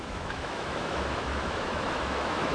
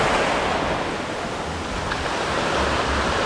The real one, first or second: second